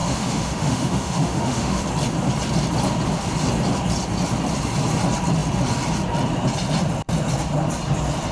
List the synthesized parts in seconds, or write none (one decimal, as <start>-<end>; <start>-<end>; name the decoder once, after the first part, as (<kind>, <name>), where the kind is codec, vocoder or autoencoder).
0.0-1.8 (autoencoder, DAC-VAE)